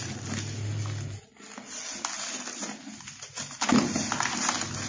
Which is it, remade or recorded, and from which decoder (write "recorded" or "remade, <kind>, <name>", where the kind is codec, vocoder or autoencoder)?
recorded